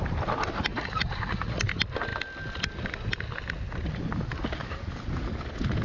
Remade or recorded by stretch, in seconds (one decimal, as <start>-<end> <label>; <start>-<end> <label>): 0.0-0.7 recorded; 0.7-1.6 remade; 1.6-5.8 recorded